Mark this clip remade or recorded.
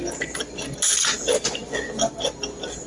recorded